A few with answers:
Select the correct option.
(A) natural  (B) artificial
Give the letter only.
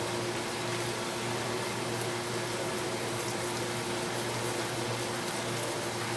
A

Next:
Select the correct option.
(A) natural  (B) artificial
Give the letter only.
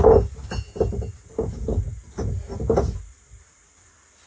A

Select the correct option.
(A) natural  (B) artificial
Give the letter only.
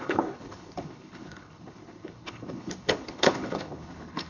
B